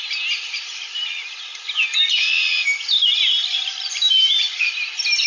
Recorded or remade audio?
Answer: recorded